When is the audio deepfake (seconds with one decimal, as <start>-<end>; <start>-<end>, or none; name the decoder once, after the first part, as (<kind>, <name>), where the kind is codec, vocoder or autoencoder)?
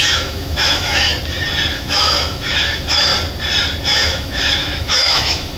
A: 0.0-1.1 (autoencoder, DAC-VAE); 1.7-3.1; 3.8-5.6